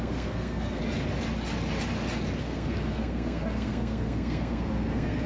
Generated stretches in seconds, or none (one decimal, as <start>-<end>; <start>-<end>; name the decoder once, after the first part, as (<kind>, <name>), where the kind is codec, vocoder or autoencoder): 0.0-0.8 (codec, SNAC); 2.4-5.3